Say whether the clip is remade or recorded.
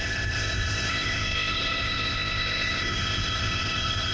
remade